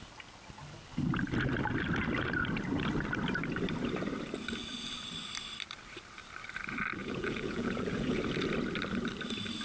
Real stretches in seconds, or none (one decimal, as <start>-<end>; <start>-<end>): 0.0-7.0; 8.2-9.6